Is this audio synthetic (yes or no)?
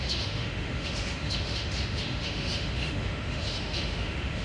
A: yes